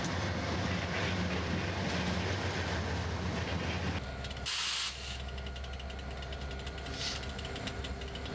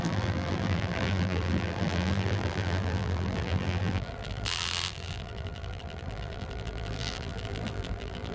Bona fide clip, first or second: first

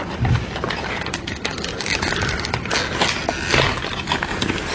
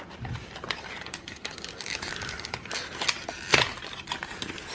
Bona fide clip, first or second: first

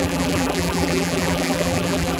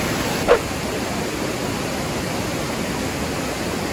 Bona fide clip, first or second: second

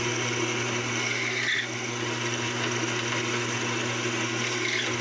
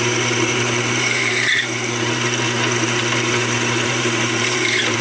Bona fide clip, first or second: first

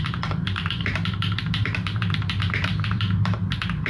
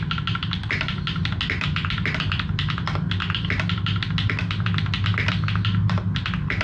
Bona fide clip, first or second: second